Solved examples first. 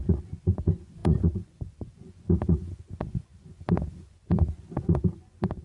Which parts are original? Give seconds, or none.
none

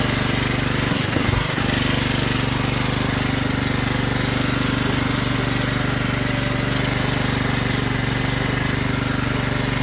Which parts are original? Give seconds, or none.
0.0-0.9; 1.6-9.8

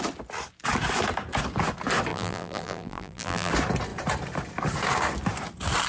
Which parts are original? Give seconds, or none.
0.0-2.1; 3.5-5.9

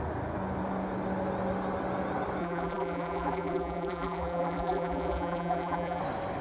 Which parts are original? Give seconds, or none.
0.0-2.4; 6.0-6.4

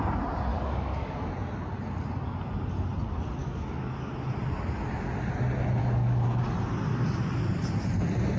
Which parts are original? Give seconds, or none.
0.0-0.5; 1.3-3.4; 4.1-5.8; 6.4-8.4

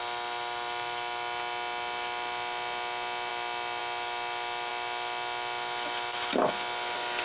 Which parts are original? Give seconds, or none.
0.0-7.2